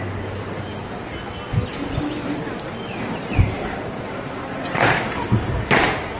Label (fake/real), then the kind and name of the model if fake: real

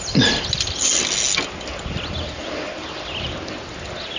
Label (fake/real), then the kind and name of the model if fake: real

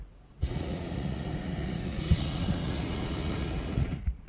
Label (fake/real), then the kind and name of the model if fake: fake, vocoder, Vocos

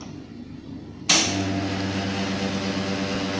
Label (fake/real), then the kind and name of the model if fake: real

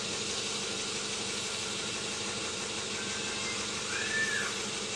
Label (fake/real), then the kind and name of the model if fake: real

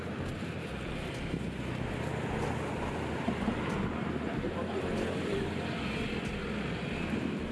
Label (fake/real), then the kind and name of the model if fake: real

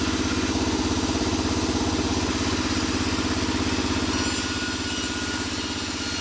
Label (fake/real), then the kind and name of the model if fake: real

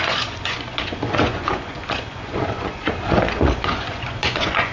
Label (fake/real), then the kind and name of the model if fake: fake, vocoder, Vocos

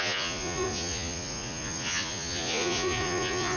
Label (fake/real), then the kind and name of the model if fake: fake, vocoder, Vocos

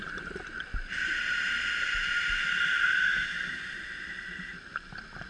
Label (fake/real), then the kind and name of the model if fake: real